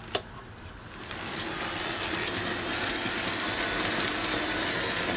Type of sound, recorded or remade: recorded